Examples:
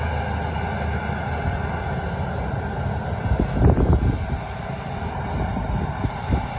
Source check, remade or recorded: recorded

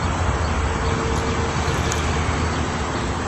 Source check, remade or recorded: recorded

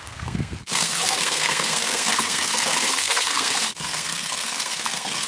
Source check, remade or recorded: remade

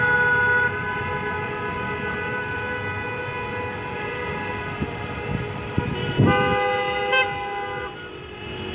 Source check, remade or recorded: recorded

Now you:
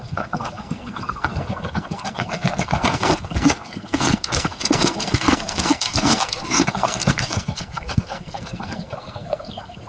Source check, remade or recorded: remade